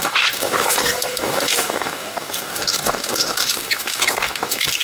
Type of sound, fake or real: fake